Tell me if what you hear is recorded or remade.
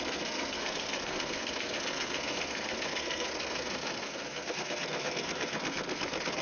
remade